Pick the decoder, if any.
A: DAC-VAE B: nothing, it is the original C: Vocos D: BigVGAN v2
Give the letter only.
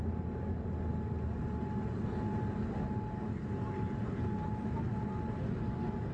B